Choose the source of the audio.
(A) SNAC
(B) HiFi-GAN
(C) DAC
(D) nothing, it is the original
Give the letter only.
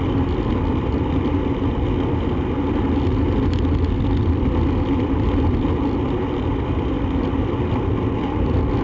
D